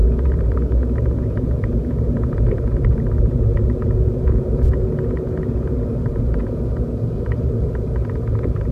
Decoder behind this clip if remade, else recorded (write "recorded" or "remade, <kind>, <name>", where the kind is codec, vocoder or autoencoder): remade, vocoder, Vocos